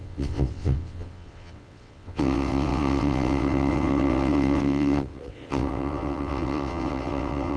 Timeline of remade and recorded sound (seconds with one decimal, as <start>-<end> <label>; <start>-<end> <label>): 0.0-7.6 remade

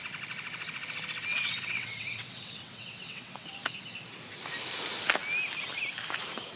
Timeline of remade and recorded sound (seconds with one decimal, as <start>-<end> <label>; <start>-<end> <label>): 0.0-1.3 recorded; 1.3-3.5 remade; 3.5-6.6 recorded

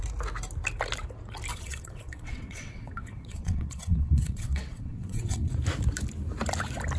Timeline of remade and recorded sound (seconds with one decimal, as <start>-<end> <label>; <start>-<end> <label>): 0.0-1.5 recorded; 1.5-5.5 remade; 5.5-7.0 recorded

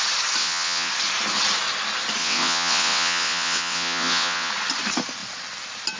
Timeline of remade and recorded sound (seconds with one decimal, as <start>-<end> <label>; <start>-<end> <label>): 0.0-0.4 recorded; 0.4-0.9 remade; 0.9-2.2 recorded; 2.2-4.5 remade; 4.5-6.0 recorded

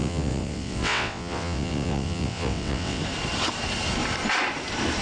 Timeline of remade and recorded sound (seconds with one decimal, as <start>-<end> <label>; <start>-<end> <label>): 0.0-3.0 remade; 3.0-5.0 recorded

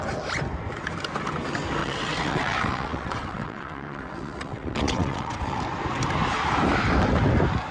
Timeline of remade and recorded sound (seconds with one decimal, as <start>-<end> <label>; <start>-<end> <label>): 0.0-1.8 recorded; 1.8-5.6 remade; 5.6-7.7 recorded